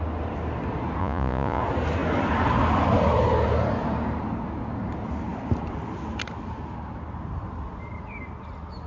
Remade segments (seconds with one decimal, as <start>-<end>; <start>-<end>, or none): 1.0-1.6